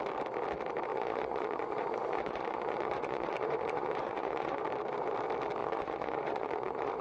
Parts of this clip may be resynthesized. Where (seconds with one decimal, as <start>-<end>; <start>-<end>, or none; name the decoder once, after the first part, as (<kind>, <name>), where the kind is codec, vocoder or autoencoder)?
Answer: 0.9-4.6 (vocoder, Vocos); 5.6-7.0